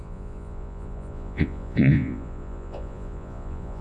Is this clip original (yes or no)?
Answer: no